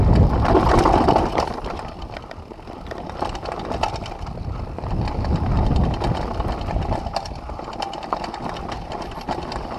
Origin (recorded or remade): recorded